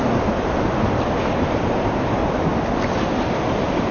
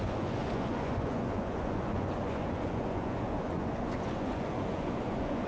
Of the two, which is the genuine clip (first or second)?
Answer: first